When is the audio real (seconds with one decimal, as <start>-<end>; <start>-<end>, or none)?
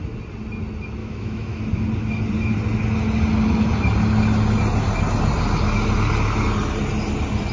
0.0-1.0; 1.6-7.5